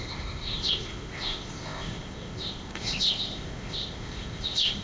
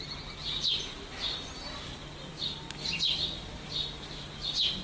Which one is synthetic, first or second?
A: first